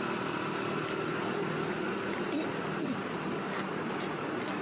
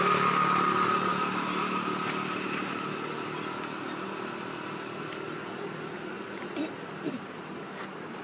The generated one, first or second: first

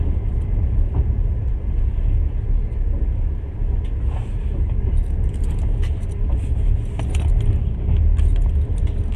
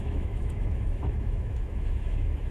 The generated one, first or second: second